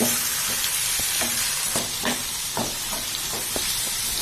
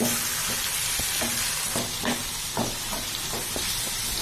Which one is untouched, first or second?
second